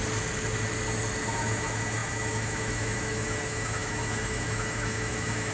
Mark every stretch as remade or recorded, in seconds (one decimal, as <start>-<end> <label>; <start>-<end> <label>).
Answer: 0.0-1.3 recorded; 1.3-5.5 remade